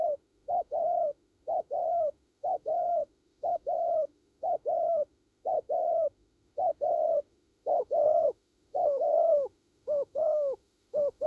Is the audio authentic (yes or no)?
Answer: no